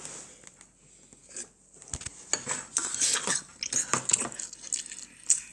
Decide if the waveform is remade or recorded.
recorded